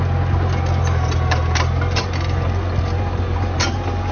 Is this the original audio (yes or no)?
yes